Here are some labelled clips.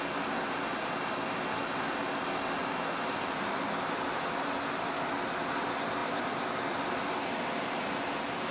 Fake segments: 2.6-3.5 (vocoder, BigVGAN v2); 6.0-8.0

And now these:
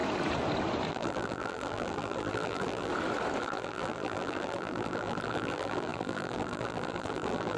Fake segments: 0.9-2.9 (vocoder, BigVGAN v2); 3.4-7.6

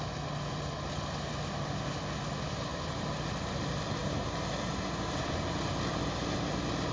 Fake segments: 2.7-3.6 (vocoder, BigVGAN v2)

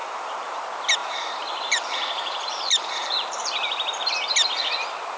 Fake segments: 0.0-0.6 (vocoder, BigVGAN v2); 1.0-4.1

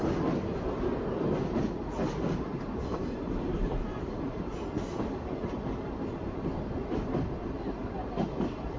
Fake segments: 2.5-4.5 (vocoder, BigVGAN v2)

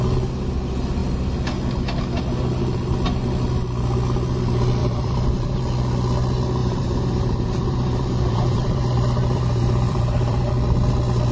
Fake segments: 4.8-5.6 (vocoder, BigVGAN v2); 6.6-10.5

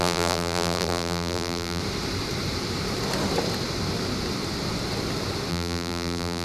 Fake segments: 0.0-1.8 (vocoder, BigVGAN v2); 5.5-6.4